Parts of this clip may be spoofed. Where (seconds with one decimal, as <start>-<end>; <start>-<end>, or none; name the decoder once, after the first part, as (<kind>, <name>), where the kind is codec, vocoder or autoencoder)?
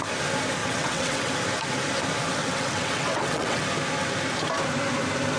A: 0.6-1.3 (vocoder, WaveNeXt); 2.4-3.6